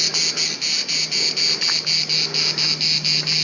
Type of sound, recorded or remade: recorded